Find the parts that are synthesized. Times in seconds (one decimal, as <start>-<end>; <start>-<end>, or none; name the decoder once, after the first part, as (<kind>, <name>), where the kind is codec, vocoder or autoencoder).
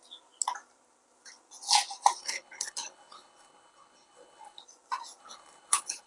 2.2-4.6 (codec, HILCodec); 5.2-6.1